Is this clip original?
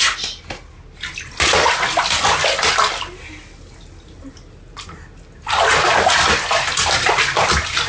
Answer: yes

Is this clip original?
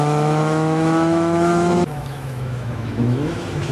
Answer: no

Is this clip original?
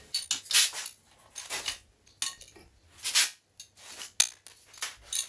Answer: yes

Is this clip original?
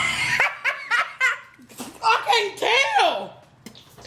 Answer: yes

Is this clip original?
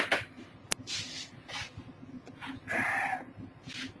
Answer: yes